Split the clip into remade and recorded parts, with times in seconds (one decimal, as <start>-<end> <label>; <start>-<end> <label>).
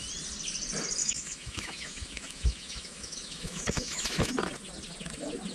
0.0-1.0 recorded; 1.0-4.3 remade; 4.3-5.5 recorded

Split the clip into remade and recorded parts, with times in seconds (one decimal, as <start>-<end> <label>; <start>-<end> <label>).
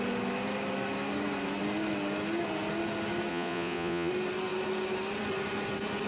0.0-3.3 recorded; 3.3-4.1 remade; 4.1-6.1 recorded